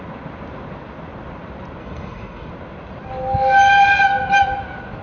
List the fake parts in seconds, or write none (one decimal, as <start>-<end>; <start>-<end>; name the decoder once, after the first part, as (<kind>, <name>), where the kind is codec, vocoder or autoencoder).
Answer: 1.8-2.5 (codec, SNAC)